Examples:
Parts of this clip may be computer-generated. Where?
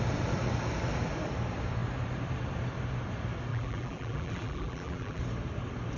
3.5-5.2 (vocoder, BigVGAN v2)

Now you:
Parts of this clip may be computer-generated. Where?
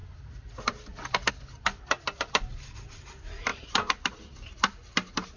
0.0-1.3 (vocoder, BigVGAN v2); 3.5-4.2